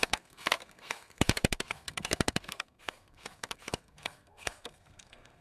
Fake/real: fake